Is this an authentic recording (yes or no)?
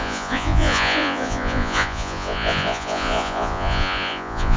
no